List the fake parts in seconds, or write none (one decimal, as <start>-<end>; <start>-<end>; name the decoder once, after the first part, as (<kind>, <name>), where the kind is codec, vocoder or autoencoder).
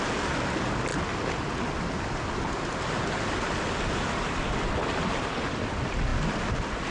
none